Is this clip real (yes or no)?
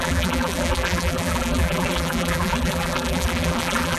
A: no